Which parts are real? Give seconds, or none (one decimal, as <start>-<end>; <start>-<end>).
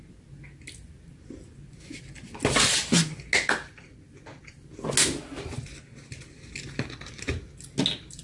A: 0.0-8.2